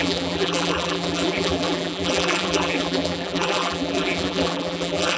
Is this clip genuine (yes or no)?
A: no